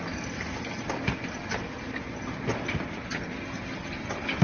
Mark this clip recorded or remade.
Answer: recorded